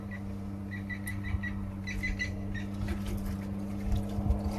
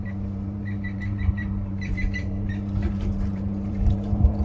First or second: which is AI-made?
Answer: second